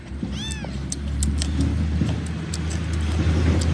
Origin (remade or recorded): recorded